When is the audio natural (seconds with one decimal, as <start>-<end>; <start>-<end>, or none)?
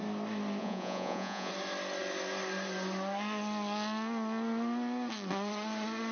0.0-0.6; 1.5-6.1